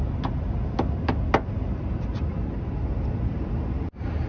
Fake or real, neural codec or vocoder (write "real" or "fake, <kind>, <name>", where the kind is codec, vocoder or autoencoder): real